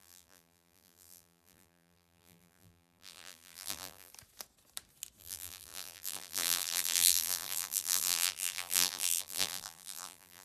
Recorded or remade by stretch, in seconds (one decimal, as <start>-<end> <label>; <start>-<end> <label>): 0.0-4.1 remade; 4.1-5.2 recorded; 5.2-10.4 remade